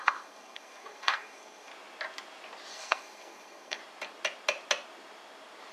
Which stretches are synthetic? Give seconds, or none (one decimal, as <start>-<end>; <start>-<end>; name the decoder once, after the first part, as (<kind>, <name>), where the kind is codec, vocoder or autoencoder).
0.0-1.7 (codec, SNAC); 2.7-3.8